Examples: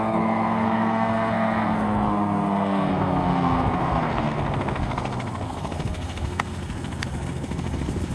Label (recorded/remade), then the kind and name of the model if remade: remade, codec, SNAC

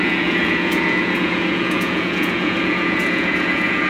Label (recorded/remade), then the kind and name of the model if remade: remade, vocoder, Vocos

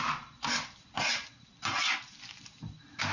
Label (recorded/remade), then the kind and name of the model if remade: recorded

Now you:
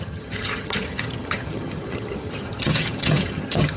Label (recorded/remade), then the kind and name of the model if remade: remade, vocoder, HiFi-GAN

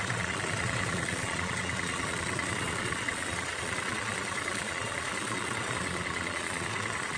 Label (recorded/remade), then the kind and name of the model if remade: remade, vocoder, Vocos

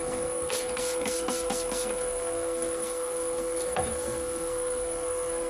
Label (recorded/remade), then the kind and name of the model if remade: remade, codec, SNAC